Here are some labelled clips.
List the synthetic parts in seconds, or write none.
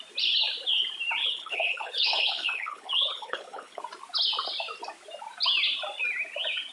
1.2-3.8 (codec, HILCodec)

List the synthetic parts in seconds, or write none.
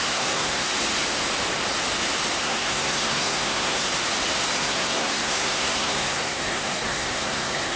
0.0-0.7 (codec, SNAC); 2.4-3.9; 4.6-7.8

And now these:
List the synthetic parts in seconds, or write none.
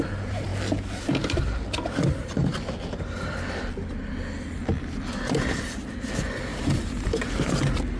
6.5-7.3 (vocoder, BigVGAN v2)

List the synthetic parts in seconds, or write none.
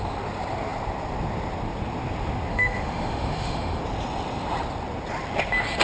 2.5-3.8 (autoencoder, DAC-VAE)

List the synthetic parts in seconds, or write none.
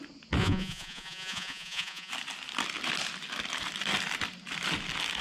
0.4-2.1 (vocoder, Vocos)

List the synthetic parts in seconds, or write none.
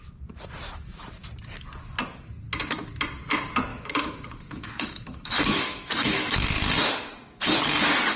3.7-6.7 (autoencoder, DAC-VAE)